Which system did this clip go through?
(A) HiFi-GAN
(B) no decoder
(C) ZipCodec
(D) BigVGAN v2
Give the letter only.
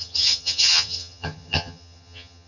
A